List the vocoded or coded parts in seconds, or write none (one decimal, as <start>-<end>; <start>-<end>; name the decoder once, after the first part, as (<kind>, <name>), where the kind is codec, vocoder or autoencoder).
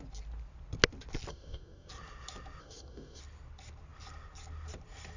1.3-1.9 (codec, DAC); 2.6-3.2